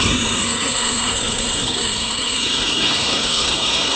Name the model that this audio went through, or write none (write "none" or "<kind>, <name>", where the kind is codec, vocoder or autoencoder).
codec, SNAC